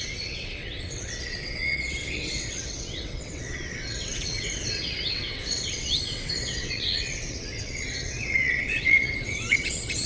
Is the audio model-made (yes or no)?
yes